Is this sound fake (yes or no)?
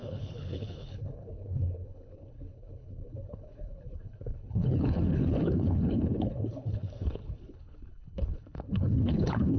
yes